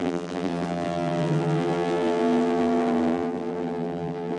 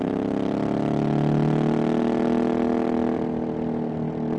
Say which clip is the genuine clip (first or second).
second